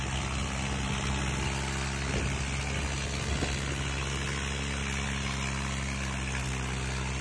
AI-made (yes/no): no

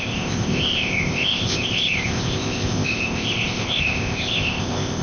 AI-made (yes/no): yes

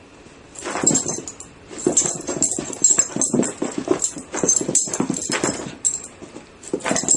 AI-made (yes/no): no